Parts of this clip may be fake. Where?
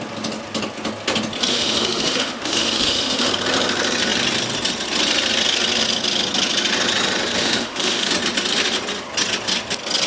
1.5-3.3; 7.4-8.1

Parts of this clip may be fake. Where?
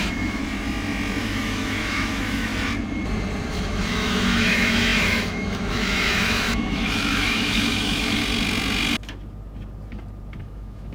0.0-0.4; 1.2-2.5; 3.5-8.2; 10.4-10.9